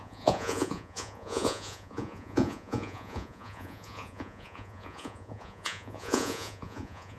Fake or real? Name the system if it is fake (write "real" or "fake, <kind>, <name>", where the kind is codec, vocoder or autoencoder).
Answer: fake, vocoder, Vocos